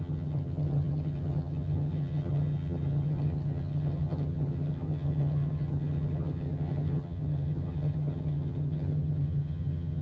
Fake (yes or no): yes